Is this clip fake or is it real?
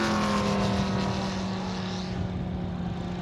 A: real